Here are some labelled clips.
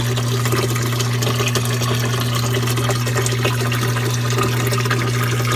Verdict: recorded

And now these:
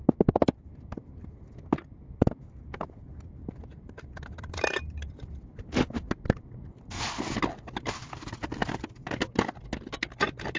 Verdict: recorded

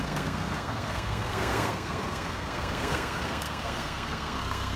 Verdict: remade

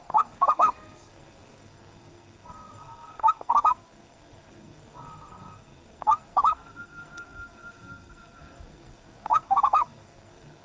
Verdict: remade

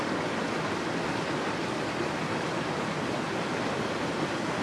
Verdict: recorded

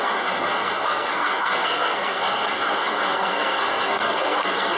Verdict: remade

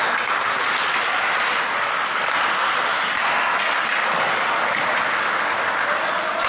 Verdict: recorded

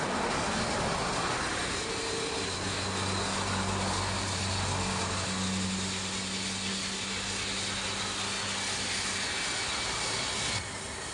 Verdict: recorded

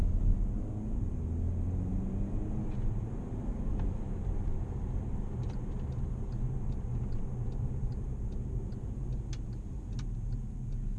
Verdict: recorded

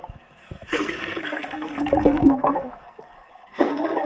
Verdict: remade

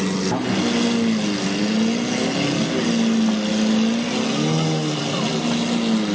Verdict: recorded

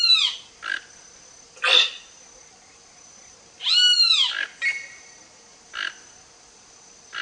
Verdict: recorded